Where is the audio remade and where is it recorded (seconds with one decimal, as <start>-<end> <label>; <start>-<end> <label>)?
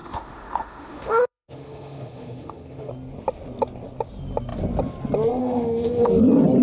0.0-2.9 remade; 2.9-5.4 recorded; 5.4-6.1 remade; 6.1-6.6 recorded